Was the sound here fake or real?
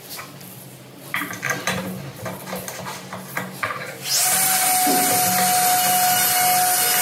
real